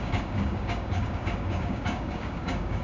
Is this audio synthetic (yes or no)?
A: yes